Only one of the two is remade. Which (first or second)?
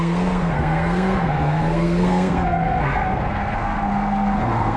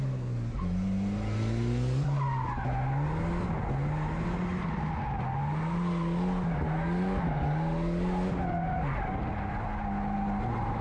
first